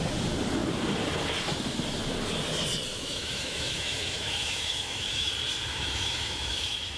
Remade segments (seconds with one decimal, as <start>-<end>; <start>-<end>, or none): 2.9-5.3; 5.7-7.0